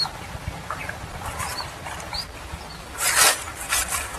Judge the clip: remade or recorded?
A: remade